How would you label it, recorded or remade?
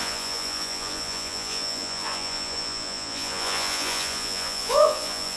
remade